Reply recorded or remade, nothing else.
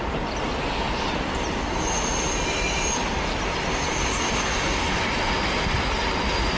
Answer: recorded